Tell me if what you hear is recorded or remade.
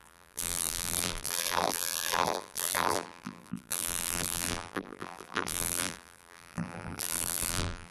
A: remade